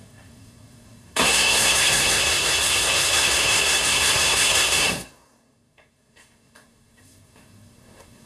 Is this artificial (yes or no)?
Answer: yes